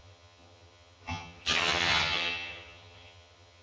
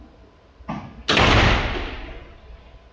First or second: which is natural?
second